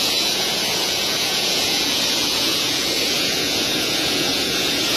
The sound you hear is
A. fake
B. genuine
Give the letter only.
A